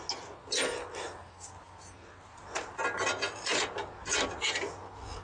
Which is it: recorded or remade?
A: recorded